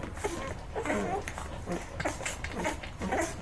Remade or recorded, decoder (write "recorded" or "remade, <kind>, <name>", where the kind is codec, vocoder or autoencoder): recorded